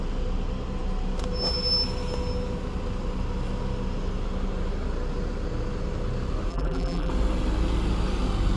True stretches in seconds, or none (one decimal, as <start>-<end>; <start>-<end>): 0.0-6.5; 7.1-8.6